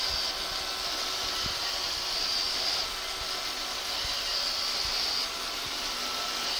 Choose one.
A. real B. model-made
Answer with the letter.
A